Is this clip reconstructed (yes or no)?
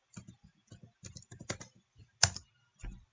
no